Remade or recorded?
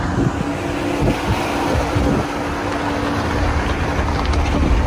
recorded